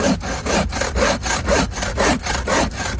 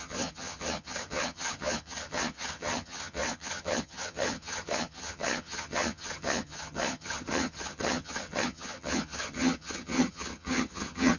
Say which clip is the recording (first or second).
first